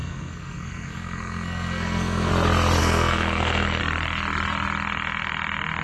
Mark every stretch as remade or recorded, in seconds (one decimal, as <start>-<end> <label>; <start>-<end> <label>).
0.0-2.3 remade; 2.3-2.8 recorded; 2.8-3.8 remade; 3.8-5.8 recorded

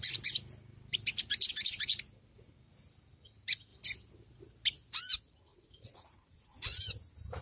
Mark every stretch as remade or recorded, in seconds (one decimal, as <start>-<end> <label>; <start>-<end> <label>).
0.0-5.5 recorded; 5.5-6.8 remade; 6.8-7.4 recorded

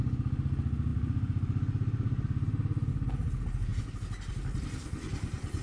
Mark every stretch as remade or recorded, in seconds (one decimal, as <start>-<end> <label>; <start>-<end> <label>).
0.0-5.6 recorded

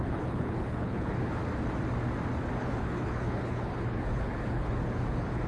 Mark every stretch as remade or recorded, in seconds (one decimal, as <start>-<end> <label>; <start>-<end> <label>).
0.0-1.4 remade; 1.4-2.6 recorded; 2.6-5.5 remade

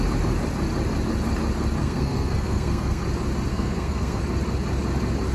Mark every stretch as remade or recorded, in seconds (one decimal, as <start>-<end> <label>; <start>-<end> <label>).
0.0-1.8 recorded; 1.8-3.0 remade; 3.0-3.5 recorded; 3.5-4.2 remade; 4.2-5.3 recorded

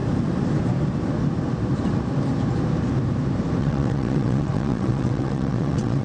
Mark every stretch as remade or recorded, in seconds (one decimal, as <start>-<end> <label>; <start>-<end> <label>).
0.0-3.6 recorded; 3.6-6.0 remade

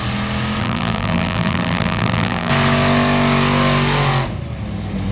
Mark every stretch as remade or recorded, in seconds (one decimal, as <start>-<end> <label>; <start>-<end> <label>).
0.0-0.6 recorded; 0.6-2.5 remade; 2.5-5.1 recorded

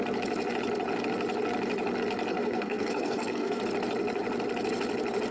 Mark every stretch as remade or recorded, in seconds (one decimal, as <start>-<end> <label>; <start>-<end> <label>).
0.0-2.3 recorded; 2.3-3.6 remade; 3.6-5.3 recorded